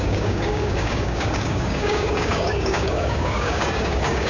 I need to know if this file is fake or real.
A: fake